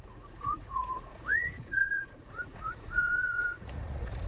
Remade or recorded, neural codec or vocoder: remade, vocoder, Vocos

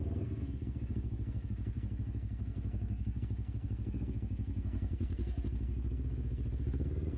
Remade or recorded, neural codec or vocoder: remade, codec, SNAC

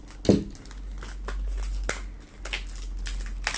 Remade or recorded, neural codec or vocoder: recorded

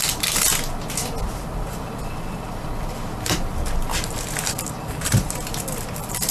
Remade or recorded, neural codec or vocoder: recorded